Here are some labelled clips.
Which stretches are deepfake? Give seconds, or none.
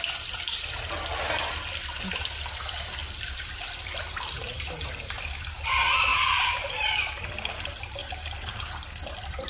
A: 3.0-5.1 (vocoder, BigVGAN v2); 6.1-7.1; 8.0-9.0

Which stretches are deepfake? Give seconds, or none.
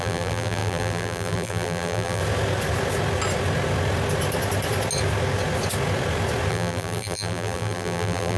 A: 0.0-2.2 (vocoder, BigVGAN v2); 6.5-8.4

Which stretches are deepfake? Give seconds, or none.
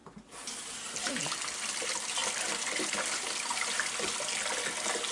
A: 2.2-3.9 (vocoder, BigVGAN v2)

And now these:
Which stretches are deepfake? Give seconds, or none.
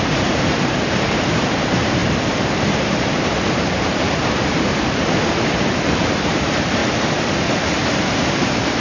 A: 0.0-6.8 (vocoder, BigVGAN v2); 7.5-8.8